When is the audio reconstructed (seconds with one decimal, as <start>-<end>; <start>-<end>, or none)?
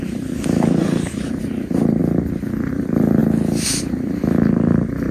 0.0-2.0; 2.7-3.2; 3.8-5.1